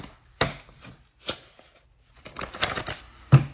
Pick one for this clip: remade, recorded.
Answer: recorded